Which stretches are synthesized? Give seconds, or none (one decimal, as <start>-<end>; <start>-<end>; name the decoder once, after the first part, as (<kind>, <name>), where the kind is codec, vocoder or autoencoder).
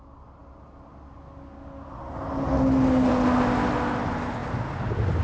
none